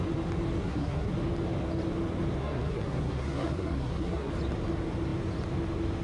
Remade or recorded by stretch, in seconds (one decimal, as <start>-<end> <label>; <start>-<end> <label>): 0.0-0.6 recorded; 0.6-1.1 remade; 1.1-2.4 recorded; 2.4-4.3 remade; 4.3-6.0 recorded